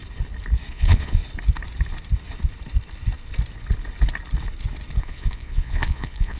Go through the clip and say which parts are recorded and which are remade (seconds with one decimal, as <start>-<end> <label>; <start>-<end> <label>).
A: 0.0-0.7 recorded; 0.7-1.2 remade; 1.2-5.0 recorded; 5.0-6.4 remade